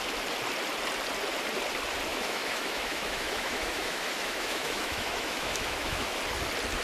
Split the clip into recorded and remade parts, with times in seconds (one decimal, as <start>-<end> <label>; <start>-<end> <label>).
0.0-2.1 recorded; 2.1-6.2 remade; 6.2-6.8 recorded